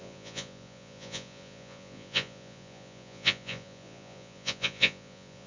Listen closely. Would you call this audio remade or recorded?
remade